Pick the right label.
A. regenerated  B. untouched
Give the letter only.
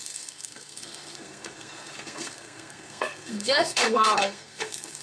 A